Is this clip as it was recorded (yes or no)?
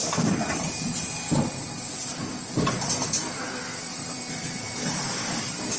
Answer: yes